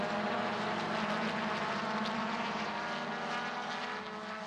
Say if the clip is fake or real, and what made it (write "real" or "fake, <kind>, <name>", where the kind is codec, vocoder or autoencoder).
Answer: real